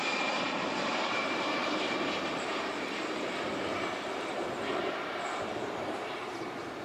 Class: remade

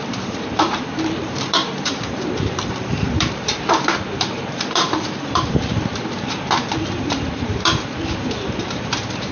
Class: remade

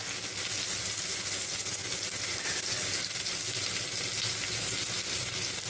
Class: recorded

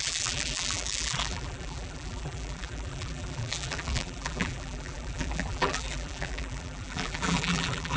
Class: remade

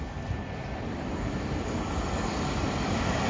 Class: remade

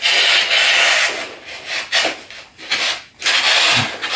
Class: recorded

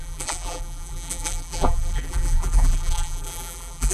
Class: remade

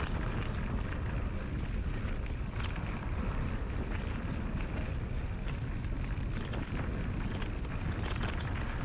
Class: remade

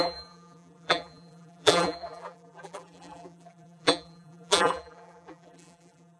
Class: remade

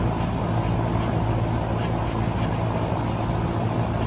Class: recorded